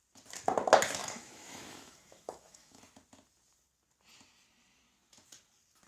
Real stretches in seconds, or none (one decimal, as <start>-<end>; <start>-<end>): 0.0-1.0; 2.8-5.9